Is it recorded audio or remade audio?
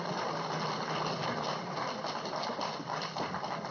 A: recorded